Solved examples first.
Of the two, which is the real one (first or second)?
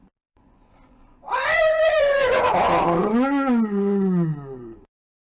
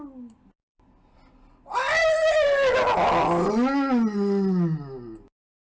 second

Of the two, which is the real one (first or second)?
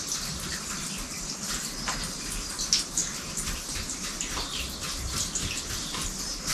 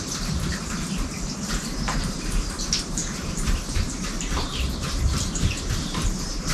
first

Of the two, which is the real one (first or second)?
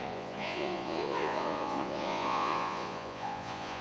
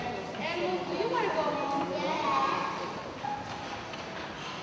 second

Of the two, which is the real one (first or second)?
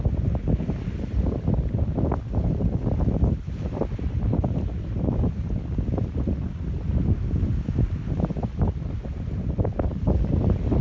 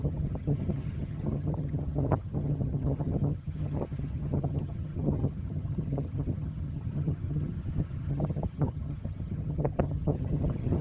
first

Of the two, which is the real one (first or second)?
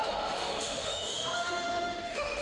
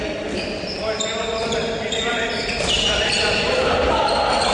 second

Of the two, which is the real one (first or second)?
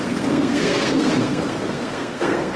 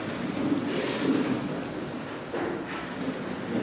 second